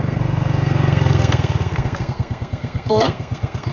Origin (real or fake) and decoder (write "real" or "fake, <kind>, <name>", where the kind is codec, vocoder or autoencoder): fake, codec, SNAC